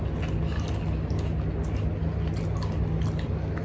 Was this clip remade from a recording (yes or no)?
no